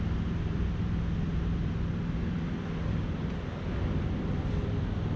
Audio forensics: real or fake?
real